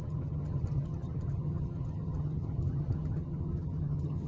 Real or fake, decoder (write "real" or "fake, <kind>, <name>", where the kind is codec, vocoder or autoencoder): fake, vocoder, HiFi-GAN